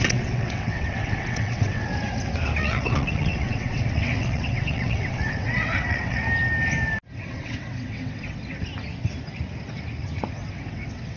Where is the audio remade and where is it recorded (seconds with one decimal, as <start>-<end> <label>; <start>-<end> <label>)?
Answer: 0.0-1.9 remade; 1.9-2.6 recorded; 2.6-6.2 remade; 6.2-7.1 recorded; 7.1-8.7 remade; 8.7-10.3 recorded; 10.3-11.2 remade